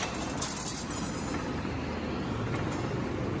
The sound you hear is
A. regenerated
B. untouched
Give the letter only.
B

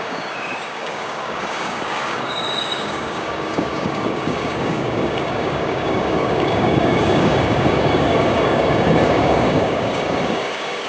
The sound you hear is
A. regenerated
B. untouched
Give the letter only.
A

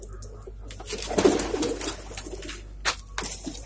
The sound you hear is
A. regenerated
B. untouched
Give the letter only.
B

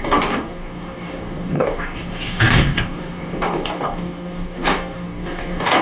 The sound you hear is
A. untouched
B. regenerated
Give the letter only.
B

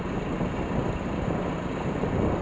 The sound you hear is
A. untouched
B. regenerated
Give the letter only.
A